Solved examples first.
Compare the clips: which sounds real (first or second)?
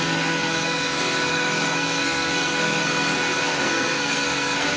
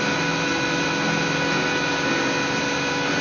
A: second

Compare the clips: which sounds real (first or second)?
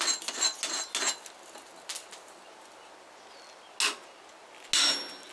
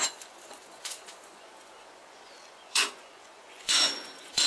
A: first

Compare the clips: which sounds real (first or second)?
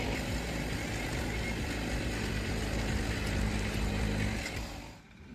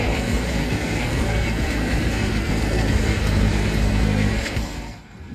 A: first